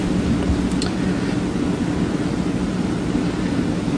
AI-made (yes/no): no